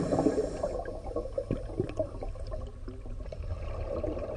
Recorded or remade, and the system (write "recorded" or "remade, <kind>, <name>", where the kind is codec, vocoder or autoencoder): remade, vocoder, BigVGAN v2